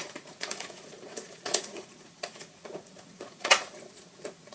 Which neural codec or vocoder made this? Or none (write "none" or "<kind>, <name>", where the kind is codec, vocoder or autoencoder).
vocoder, Vocos